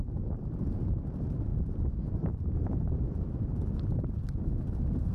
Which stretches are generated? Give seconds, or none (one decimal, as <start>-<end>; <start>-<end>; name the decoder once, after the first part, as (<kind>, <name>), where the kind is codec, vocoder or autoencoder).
1.5-3.6 (vocoder, BigVGAN v2)